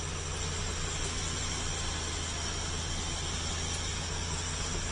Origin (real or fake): real